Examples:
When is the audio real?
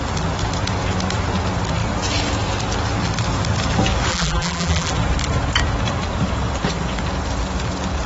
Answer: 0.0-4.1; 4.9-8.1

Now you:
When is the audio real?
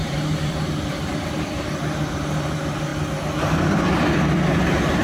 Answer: 2.9-4.5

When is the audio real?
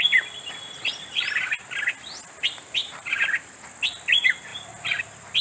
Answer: 0.0-2.8; 3.7-5.4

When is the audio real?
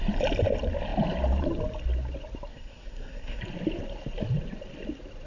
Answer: 0.0-2.5; 3.4-5.3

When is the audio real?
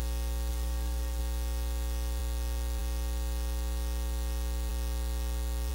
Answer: 0.0-0.5; 1.2-5.7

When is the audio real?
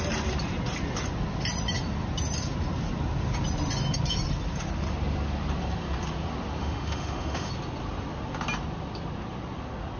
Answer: 0.0-6.6; 7.5-10.0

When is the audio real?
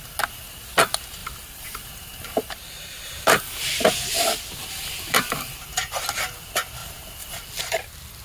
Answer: 0.0-1.2; 3.4-4.6; 5.6-8.2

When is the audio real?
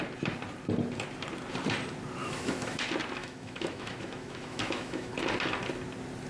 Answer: 0.0-2.2; 2.8-3.2; 5.1-6.3